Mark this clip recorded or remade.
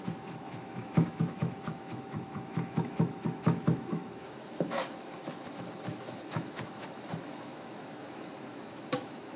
remade